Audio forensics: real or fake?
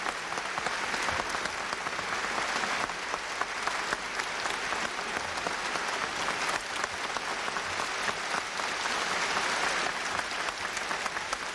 real